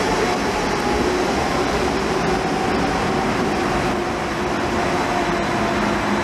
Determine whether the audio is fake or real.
real